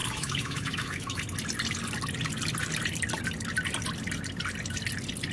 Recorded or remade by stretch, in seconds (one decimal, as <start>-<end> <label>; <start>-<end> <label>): 0.0-1.2 remade; 1.2-5.3 recorded

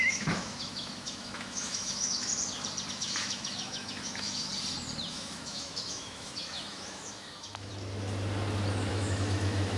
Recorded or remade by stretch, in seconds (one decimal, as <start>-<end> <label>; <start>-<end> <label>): 0.0-2.3 remade; 2.3-2.9 recorded; 2.9-4.5 remade; 4.5-5.1 recorded; 5.1-7.7 remade; 7.7-8.9 recorded; 8.9-9.8 remade

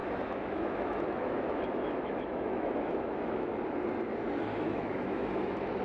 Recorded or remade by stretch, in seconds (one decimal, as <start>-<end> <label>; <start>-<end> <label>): 0.0-3.5 remade; 3.5-4.5 recorded; 4.5-5.8 remade

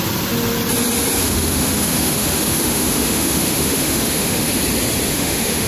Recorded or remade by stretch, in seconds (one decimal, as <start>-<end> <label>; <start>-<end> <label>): 0.0-1.2 recorded; 1.2-4.6 remade; 4.6-5.1 recorded; 5.1-5.7 remade

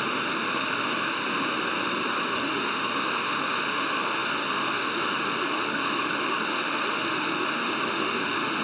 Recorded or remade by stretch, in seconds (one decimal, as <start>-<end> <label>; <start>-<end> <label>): 0.0-1.1 remade; 1.1-2.3 recorded; 2.3-8.6 remade

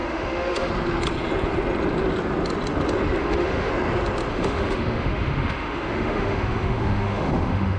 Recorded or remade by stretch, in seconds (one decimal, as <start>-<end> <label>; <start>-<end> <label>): 0.0-0.7 remade; 0.7-3.2 recorded; 3.2-3.7 remade; 3.7-4.3 recorded; 4.3-7.8 remade